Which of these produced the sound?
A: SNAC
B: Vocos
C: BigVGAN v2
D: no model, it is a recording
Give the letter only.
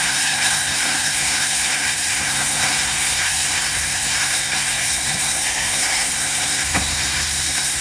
A